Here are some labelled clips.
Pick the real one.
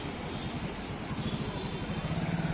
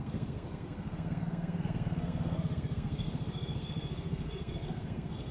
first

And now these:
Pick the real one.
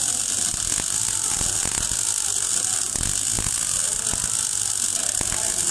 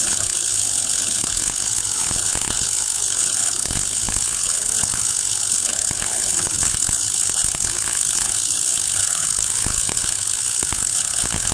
first